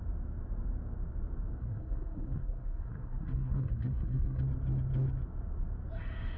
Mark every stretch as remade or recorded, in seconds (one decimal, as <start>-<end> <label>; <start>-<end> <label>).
0.0-1.6 recorded; 1.6-4.4 remade; 4.4-6.4 recorded